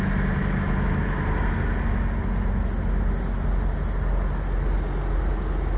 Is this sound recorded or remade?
recorded